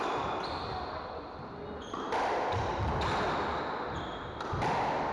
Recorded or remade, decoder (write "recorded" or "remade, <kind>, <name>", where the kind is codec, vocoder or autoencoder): recorded